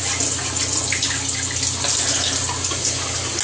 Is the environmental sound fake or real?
real